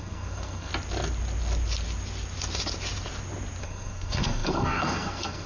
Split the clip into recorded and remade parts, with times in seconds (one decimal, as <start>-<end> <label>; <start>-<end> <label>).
0.0-0.7 remade; 0.7-3.6 recorded; 3.6-5.5 remade